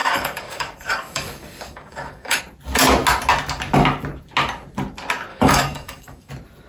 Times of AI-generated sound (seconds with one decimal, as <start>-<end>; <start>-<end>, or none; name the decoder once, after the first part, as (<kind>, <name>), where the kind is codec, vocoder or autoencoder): 0.0-2.4 (codec, DAC); 5.3-6.3